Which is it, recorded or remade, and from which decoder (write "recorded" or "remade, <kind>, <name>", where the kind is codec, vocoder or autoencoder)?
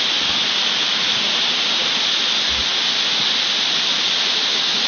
recorded